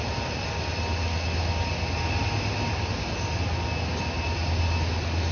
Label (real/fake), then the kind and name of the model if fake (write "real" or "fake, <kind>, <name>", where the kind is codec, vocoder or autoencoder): real